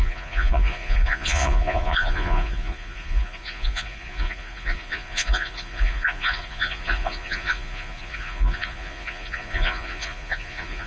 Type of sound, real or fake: fake